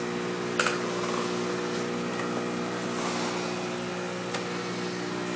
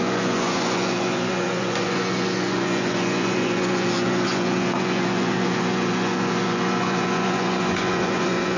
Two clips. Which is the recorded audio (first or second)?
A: first